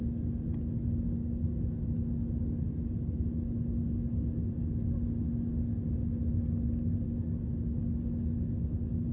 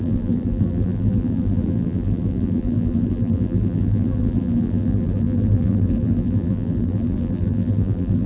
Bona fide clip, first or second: first